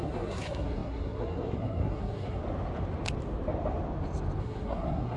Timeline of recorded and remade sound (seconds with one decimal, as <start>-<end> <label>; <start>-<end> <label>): 0.0-2.4 remade; 2.4-4.4 recorded; 4.4-5.2 remade